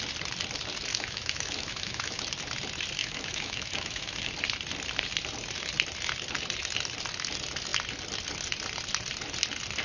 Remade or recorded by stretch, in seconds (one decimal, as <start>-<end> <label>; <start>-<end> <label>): 0.0-0.9 recorded; 0.9-2.2 remade; 2.2-3.0 recorded; 3.0-4.3 remade; 4.3-9.8 recorded